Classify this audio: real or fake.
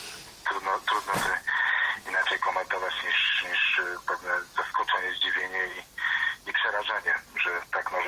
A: real